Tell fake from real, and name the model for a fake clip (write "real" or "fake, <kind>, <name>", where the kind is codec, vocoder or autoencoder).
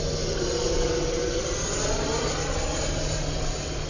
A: real